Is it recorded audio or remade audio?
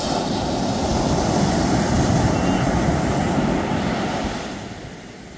recorded